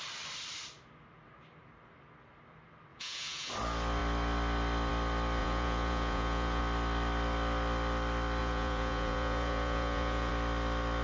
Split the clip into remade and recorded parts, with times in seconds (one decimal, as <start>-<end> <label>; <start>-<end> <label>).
0.0-2.9 recorded; 2.9-3.5 remade; 3.5-5.4 recorded; 5.4-6.6 remade; 6.6-8.4 recorded; 8.4-10.3 remade; 10.3-11.0 recorded